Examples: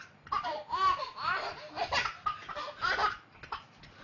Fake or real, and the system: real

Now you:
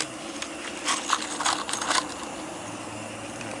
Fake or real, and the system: real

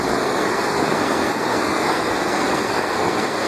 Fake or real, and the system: fake, codec, SNAC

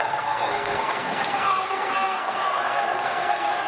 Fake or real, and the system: fake, codec, SNAC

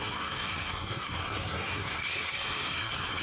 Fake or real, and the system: fake, codec, SNAC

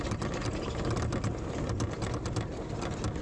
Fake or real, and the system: real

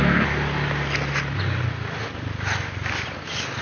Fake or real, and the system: real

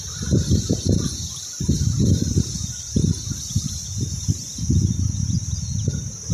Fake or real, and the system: real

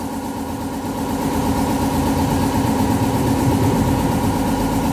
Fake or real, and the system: real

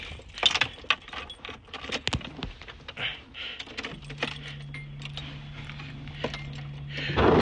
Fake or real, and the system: real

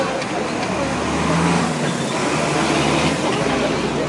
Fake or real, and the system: real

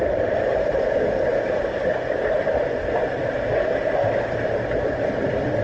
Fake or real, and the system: real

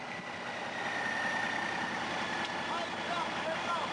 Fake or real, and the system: real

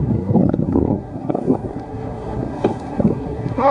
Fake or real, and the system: fake, codec, SNAC